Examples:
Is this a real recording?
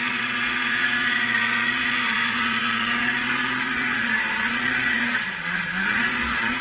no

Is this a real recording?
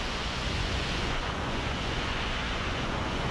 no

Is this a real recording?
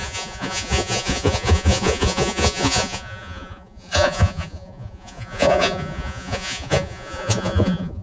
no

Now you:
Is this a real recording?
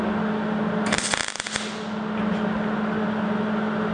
yes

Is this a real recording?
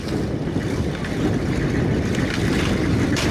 yes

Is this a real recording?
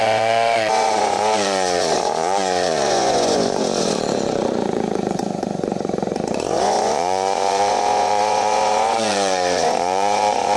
no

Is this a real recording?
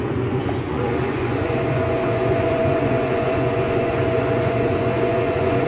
no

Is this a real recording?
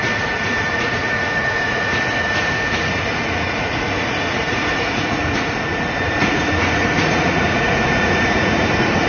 no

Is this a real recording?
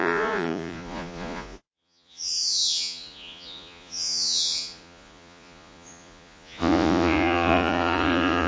no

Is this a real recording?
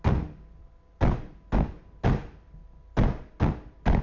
yes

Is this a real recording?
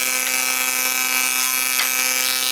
yes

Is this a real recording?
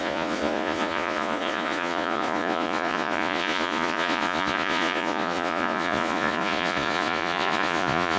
no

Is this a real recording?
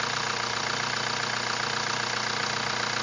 yes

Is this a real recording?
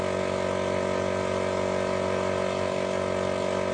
yes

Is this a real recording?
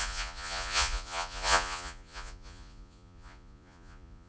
no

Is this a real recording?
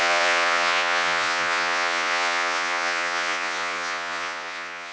no